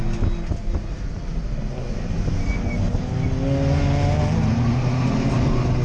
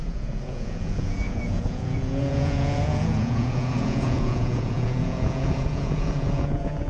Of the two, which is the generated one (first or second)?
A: second